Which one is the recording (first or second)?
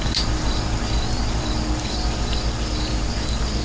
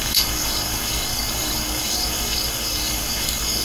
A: first